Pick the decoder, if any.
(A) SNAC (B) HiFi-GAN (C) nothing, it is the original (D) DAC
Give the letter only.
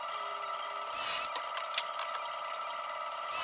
C